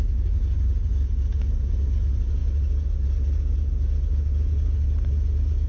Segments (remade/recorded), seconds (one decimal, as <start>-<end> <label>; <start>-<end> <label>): 0.0-5.7 recorded